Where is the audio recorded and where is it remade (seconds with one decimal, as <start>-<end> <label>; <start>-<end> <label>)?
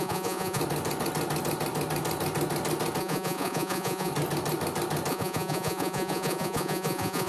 0.0-0.6 remade; 0.6-3.0 recorded; 3.0-4.1 remade; 4.1-5.1 recorded; 5.1-7.3 remade